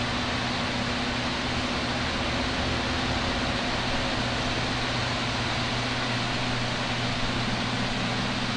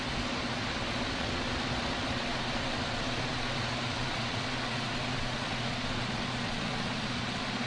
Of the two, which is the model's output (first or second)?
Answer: second